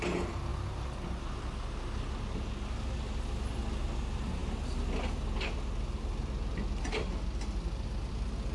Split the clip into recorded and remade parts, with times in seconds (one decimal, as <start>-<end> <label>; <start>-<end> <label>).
0.0-8.5 recorded

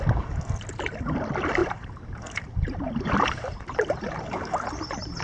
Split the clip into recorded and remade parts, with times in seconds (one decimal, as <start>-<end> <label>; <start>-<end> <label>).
0.0-1.6 recorded; 1.6-4.7 remade; 4.7-5.2 recorded

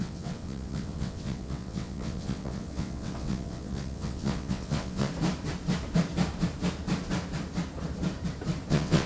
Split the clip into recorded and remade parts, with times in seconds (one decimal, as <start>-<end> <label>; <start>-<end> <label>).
0.0-5.1 remade; 5.1-8.7 recorded; 8.7-9.1 remade

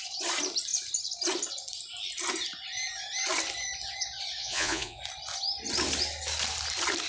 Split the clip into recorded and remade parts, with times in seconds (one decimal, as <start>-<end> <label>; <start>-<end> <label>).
0.0-4.4 recorded; 4.4-5.0 remade; 5.0-7.1 recorded

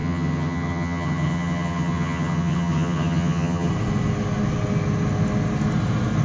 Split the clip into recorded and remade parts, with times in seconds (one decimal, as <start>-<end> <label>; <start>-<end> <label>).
0.0-3.7 remade; 3.7-6.2 recorded

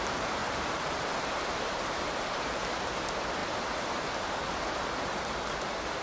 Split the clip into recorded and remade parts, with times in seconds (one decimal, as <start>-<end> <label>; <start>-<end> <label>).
0.0-0.4 remade; 0.4-1.5 recorded; 1.5-6.0 remade

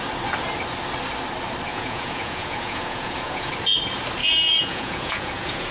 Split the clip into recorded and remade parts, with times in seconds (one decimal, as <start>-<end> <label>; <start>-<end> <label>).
0.0-1.7 recorded; 1.7-3.5 remade; 3.5-4.2 recorded; 4.2-5.7 remade

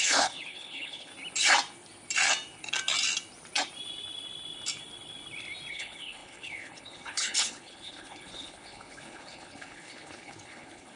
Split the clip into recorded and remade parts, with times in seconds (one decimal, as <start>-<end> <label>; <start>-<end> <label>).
0.0-1.1 remade; 1.1-5.7 recorded; 5.7-11.0 remade